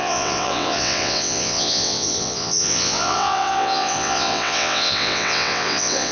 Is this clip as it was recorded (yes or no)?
no